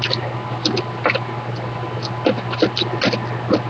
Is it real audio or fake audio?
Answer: real